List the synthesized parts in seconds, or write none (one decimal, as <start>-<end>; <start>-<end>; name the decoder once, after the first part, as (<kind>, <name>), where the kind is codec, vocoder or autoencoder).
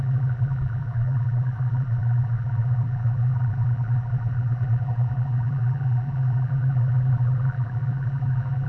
0.0-8.7 (vocoder, BigVGAN v2)